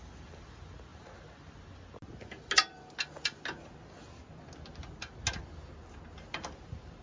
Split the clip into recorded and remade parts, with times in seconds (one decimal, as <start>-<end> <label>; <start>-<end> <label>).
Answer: 0.0-7.0 recorded